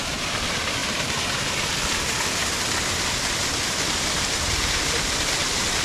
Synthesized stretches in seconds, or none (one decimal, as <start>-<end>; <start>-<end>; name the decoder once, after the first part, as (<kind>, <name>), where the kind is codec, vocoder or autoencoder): 0.0-2.4 (vocoder, BigVGAN v2); 4.8-5.8